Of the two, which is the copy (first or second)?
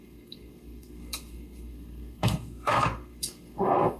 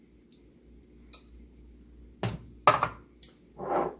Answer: first